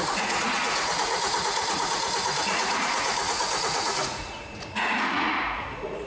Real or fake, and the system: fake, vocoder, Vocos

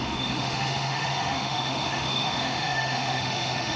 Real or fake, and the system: fake, autoencoder, DAC-VAE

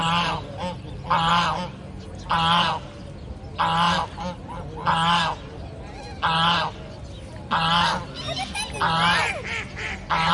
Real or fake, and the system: real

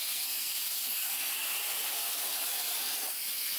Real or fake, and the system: fake, codec, SNAC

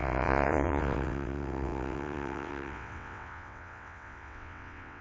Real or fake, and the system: fake, vocoder, WaveNeXt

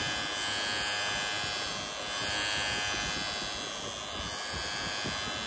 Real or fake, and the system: real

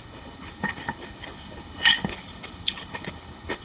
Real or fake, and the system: fake, codec, HILCodec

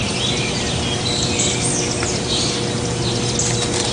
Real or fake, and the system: real